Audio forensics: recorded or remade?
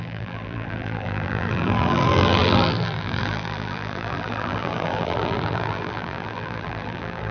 remade